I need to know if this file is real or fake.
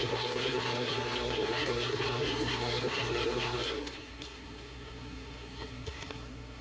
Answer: fake